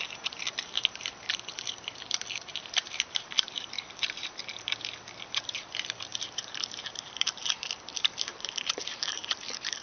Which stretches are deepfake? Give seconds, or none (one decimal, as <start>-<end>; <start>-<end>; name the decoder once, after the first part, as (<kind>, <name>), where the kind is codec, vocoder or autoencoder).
0.0-4.5 (vocoder, BigVGAN v2); 5.3-9.8

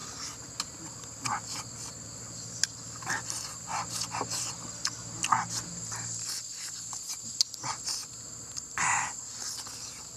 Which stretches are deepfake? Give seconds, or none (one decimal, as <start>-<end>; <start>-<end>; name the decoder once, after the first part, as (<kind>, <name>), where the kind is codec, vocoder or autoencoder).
none

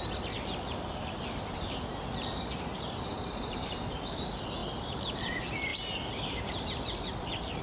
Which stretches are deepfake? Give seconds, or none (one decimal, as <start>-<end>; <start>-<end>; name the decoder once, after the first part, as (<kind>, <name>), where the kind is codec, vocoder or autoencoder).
5.7-7.6 (vocoder, BigVGAN v2)

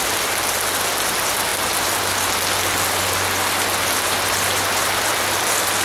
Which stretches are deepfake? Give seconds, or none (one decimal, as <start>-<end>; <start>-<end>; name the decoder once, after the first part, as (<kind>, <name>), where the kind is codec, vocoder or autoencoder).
none

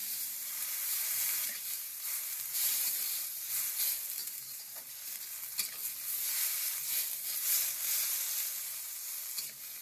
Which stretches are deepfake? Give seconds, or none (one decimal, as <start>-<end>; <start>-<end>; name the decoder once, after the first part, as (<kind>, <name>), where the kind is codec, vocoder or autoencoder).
0.0-3.5 (vocoder, BigVGAN v2); 4.2-4.9